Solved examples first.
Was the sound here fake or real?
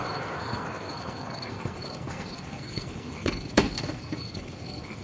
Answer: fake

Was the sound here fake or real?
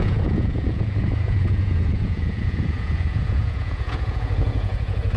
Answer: fake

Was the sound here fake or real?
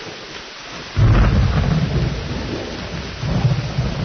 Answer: real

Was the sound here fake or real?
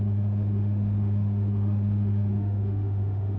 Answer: fake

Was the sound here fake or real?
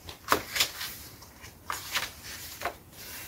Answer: fake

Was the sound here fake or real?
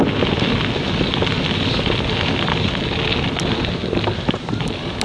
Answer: real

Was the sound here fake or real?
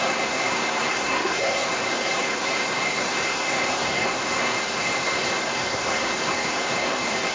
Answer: fake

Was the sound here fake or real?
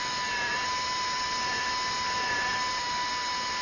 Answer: real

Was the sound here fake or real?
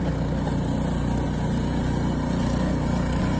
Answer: real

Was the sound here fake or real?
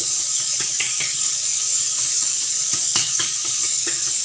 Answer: fake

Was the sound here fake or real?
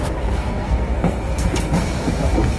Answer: fake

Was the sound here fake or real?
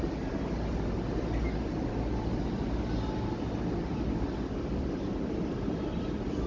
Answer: real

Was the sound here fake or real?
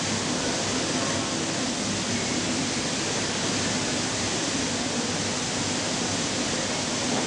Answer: real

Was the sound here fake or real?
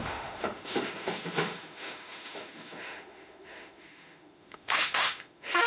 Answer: fake